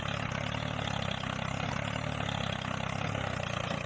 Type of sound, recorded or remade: recorded